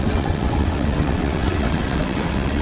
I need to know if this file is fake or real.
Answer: fake